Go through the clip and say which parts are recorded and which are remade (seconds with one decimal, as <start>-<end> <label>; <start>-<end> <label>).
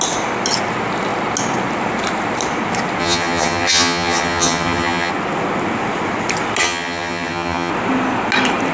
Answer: 0.0-3.0 recorded; 3.0-5.1 remade; 5.1-6.6 recorded; 6.6-7.7 remade; 7.7-8.7 recorded